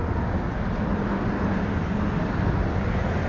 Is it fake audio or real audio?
real